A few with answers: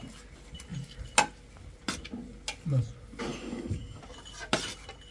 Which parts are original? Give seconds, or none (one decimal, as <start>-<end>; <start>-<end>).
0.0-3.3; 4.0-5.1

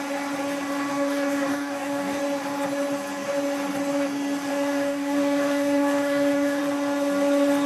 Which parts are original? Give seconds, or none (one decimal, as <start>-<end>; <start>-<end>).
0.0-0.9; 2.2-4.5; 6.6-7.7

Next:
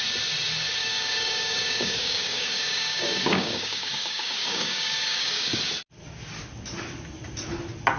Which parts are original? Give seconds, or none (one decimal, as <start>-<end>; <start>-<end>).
0.0-0.8; 5.6-8.0

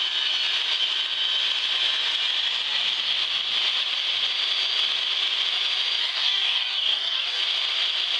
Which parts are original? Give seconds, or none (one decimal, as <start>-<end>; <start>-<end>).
0.0-6.0; 7.4-8.2

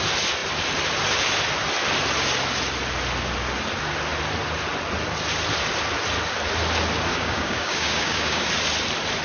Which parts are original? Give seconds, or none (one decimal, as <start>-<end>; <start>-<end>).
0.0-7.1; 8.5-9.2

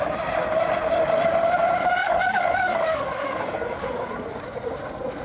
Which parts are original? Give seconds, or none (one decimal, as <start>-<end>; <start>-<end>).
0.0-2.0; 4.1-5.2